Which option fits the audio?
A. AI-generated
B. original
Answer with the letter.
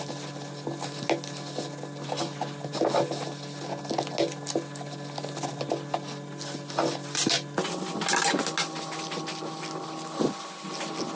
B